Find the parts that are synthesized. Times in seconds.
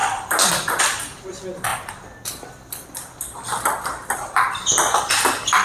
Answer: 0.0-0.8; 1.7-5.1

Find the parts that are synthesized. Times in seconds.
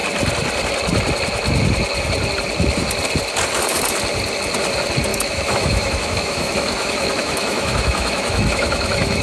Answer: 5.1-9.2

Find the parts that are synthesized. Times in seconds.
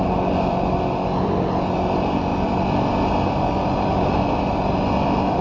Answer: none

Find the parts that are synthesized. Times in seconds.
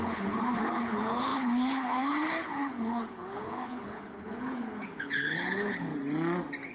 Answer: 0.0-5.9